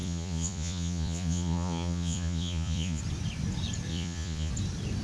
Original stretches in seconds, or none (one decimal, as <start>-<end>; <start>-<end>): 3.0-3.9; 4.5-5.0